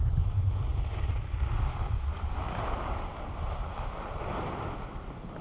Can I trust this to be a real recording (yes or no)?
yes